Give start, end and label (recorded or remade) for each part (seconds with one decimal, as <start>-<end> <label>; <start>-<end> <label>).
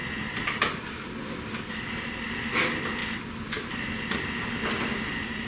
0.0-5.5 recorded